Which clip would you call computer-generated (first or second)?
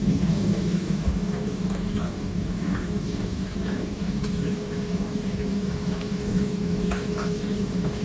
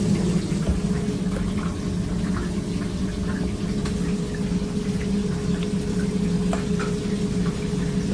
first